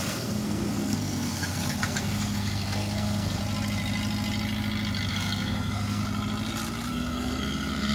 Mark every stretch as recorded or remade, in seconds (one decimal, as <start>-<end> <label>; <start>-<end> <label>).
0.0-3.4 remade; 3.4-5.1 recorded; 5.1-6.0 remade; 6.0-6.9 recorded; 6.9-7.9 remade